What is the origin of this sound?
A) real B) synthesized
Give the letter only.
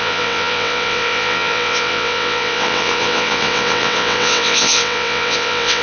B